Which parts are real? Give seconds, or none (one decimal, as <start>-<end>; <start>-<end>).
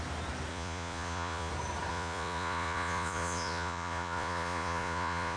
0.0-0.5; 1.5-1.9